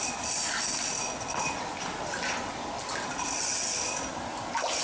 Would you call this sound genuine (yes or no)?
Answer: yes